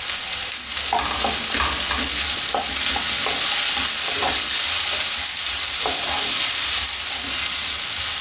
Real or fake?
real